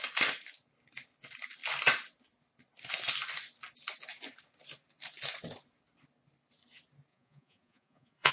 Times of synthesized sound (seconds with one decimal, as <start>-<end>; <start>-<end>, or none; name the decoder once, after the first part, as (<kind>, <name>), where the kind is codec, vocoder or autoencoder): 7.1-8.3 (vocoder, Vocos)

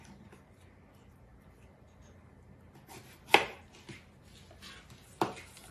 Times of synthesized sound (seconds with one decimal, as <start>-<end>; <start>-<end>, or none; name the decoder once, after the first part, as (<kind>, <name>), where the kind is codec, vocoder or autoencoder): none

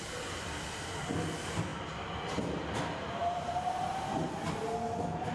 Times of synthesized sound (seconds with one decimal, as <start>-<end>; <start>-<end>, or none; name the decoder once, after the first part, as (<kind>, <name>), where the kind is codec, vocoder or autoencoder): none